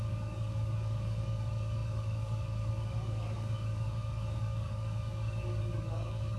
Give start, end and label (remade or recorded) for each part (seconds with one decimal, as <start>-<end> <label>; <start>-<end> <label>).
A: 0.0-6.4 remade